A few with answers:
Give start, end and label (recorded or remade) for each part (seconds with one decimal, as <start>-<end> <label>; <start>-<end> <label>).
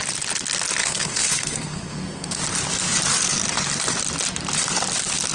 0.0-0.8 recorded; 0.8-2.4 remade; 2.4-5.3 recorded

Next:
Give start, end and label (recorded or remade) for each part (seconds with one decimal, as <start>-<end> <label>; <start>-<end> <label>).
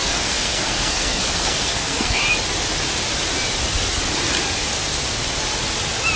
0.0-2.2 remade; 2.2-6.2 recorded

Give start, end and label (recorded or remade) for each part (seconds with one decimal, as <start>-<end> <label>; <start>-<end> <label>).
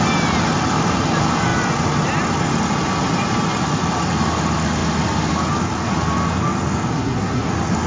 0.0-6.9 recorded; 6.9-7.5 remade; 7.5-7.9 recorded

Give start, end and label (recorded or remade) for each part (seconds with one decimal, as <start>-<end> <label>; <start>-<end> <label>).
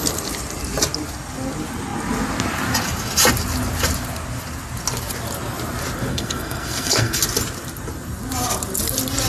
0.0-6.1 recorded; 6.1-7.2 remade; 7.2-9.3 recorded